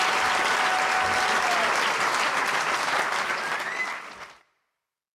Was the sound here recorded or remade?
recorded